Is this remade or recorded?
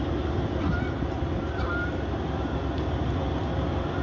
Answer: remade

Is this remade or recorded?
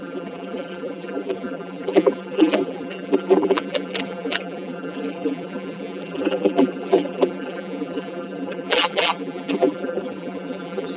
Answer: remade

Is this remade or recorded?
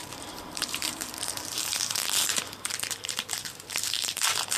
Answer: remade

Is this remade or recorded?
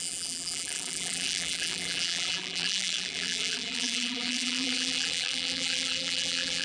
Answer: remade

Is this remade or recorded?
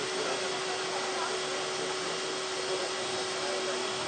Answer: recorded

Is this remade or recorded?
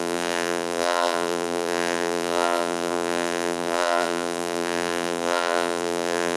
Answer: remade